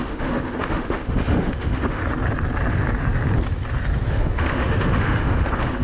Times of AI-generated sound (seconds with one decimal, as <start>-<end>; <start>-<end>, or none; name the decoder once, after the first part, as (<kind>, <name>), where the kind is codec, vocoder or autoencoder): 0.0-2.0 (autoencoder, DAC-VAE); 4.1-5.8